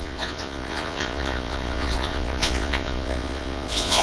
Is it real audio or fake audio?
fake